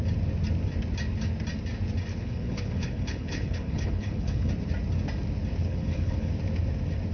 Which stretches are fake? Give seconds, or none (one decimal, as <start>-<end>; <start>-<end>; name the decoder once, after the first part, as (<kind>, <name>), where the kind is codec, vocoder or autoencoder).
2.1-4.5 (codec, HILCodec); 5.6-6.3